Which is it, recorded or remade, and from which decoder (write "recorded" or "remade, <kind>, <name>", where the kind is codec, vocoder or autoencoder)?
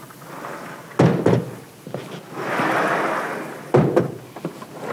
recorded